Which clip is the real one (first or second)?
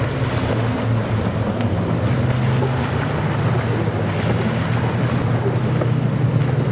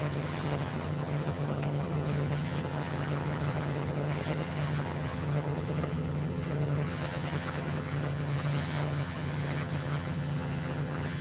first